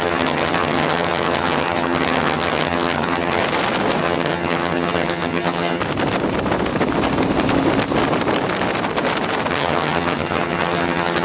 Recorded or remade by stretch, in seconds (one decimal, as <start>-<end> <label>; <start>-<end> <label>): 0.0-3.4 remade; 3.4-4.0 recorded; 4.0-5.8 remade; 5.8-9.5 recorded; 9.5-11.2 remade